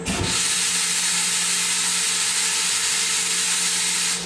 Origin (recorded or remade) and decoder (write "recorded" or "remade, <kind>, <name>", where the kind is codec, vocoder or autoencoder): recorded